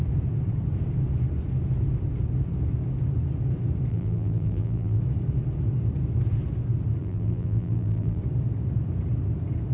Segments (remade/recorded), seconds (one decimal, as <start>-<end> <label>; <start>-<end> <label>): 0.0-3.9 recorded; 3.9-5.0 remade; 5.0-7.0 recorded; 7.0-8.2 remade; 8.2-9.7 recorded